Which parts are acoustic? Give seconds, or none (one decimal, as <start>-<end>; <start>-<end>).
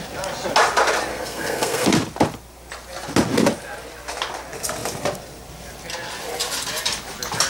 0.0-1.1; 1.9-7.5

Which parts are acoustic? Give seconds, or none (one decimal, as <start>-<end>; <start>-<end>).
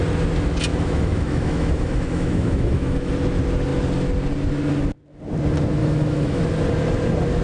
0.0-0.7; 3.1-5.8; 6.4-7.4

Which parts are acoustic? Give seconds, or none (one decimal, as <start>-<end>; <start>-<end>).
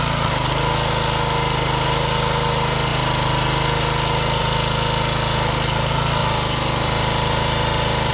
0.0-6.2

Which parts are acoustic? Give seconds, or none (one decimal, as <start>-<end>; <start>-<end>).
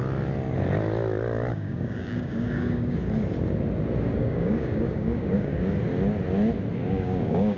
0.0-1.5; 3.0-4.2; 5.5-6.9